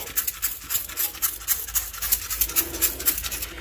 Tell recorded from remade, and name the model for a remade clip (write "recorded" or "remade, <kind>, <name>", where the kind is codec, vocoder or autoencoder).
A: recorded